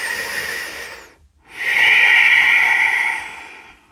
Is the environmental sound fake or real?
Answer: real